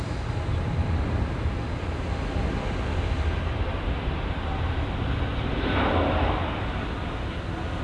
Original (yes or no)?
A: yes